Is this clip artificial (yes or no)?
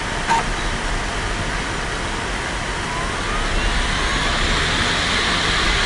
no